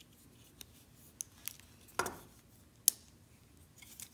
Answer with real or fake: real